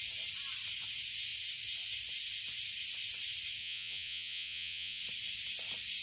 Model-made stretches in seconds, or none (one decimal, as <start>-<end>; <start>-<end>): 3.6-5.0